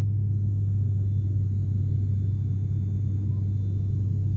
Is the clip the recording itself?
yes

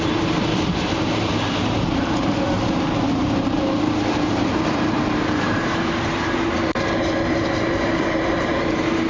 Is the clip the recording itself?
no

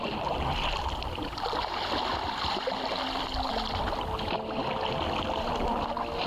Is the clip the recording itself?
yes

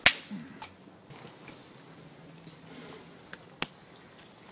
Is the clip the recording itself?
yes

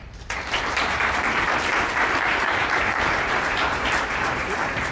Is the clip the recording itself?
no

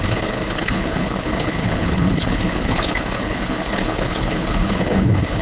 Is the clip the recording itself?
no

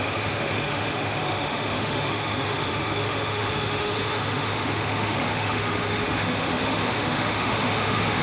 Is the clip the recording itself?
no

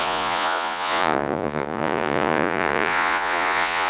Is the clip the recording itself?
no